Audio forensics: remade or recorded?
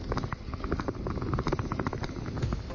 recorded